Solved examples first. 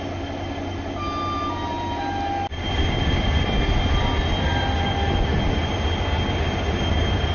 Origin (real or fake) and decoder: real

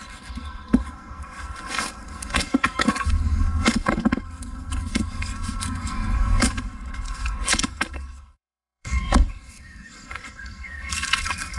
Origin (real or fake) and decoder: fake, codec, SNAC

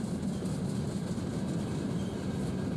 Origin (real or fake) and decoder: real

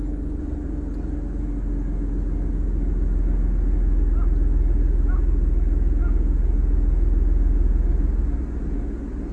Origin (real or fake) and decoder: real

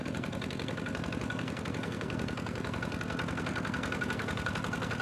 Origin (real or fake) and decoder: fake, codec, SNAC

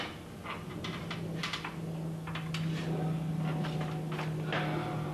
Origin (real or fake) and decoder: real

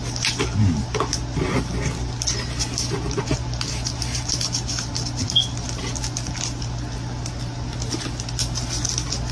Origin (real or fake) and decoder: real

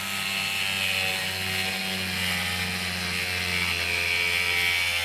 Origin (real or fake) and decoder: real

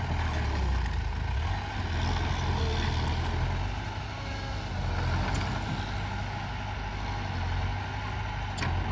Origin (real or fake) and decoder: real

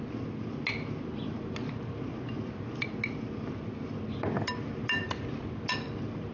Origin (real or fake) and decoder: real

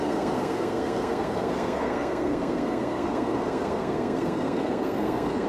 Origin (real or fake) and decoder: fake, codec, SNAC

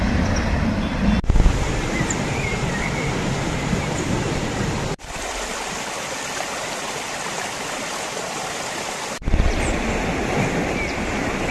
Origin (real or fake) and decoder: real